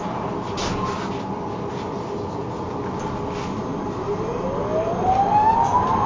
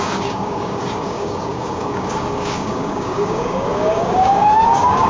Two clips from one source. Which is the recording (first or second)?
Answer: first